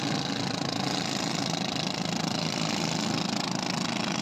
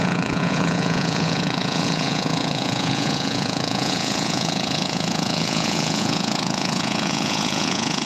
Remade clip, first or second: second